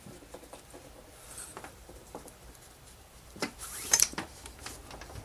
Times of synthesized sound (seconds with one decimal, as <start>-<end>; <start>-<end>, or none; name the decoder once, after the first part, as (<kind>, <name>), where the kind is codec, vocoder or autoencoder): 1.5-4.6 (vocoder, BigVGAN v2)